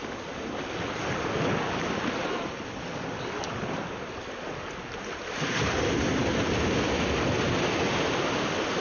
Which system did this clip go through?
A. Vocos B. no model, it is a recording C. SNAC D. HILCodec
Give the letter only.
B